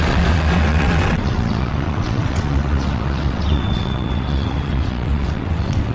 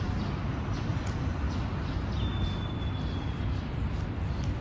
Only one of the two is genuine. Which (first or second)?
second